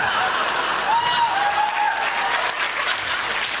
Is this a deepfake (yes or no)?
no